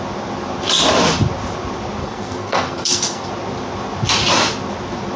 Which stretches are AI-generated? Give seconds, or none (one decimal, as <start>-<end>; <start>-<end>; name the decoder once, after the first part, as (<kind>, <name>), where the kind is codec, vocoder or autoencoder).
2.0-3.3 (codec, SNAC)